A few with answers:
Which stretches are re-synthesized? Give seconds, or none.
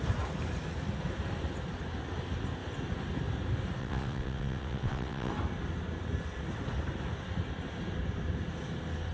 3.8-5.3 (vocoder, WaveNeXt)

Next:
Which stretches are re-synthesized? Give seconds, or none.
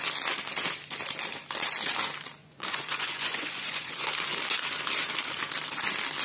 2.4-4.1 (vocoder, Vocos)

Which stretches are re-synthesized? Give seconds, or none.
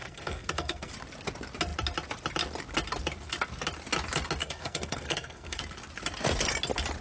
0.0-0.9 (codec, SNAC); 4.4-5.6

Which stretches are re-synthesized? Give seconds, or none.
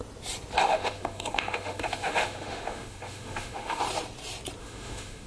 0.6-3.8 (autoencoder, DAC-VAE); 4.6-5.3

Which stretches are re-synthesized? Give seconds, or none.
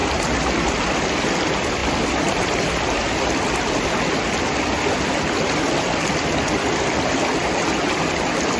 0.0-0.7 (vocoder, BigVGAN v2)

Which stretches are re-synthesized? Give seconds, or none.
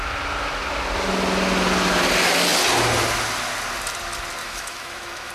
4.4-5.3 (autoencoder, DAC-VAE)